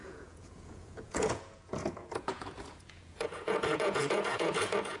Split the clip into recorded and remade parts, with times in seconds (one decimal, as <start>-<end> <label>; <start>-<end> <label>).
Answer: 0.0-5.0 remade